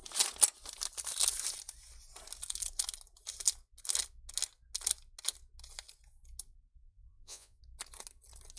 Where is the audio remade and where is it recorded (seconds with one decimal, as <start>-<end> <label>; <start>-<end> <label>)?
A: 0.0-6.9 recorded; 6.9-7.6 remade; 7.6-8.6 recorded